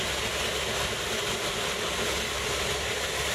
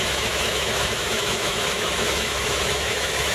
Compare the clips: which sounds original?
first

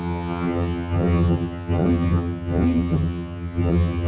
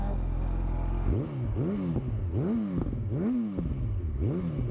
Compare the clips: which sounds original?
second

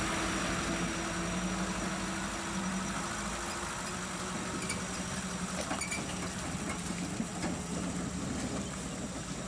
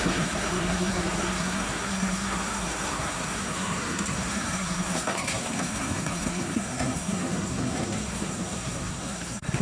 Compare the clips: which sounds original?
first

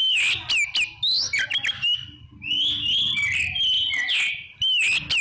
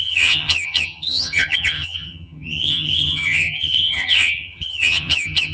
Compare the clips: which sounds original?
first